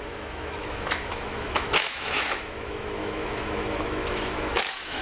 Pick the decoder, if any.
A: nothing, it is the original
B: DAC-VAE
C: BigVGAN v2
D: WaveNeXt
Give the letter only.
B